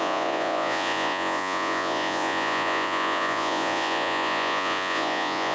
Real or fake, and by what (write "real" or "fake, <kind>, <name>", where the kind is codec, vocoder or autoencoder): fake, vocoder, Vocos